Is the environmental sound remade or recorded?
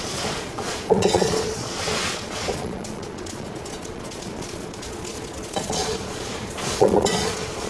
remade